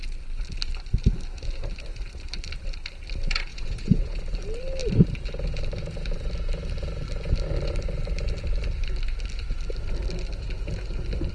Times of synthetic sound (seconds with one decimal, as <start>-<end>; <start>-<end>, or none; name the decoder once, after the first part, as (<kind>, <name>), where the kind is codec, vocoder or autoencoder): 3.5-4.2 (vocoder, Vocos)